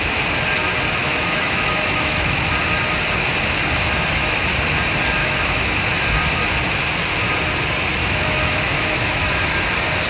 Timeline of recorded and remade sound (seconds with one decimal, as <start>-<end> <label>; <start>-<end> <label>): 0.0-1.0 recorded; 1.0-2.5 remade; 2.5-5.2 recorded; 5.2-5.8 remade; 5.8-8.0 recorded; 8.0-9.4 remade; 9.4-10.1 recorded